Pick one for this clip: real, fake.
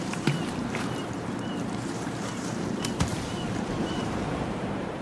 fake